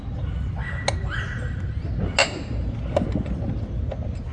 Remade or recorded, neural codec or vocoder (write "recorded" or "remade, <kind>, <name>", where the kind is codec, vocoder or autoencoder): recorded